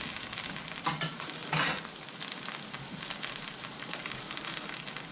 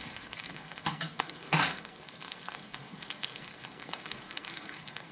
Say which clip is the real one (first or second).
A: first